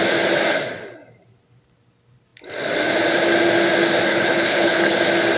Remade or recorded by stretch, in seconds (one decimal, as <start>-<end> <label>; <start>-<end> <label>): 0.0-4.1 recorded; 4.1-5.0 remade; 5.0-5.4 recorded